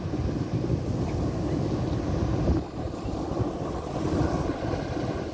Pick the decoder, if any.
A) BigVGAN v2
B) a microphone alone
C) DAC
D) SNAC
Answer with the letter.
B